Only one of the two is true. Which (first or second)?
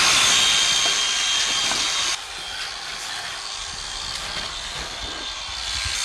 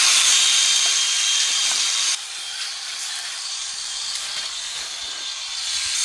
first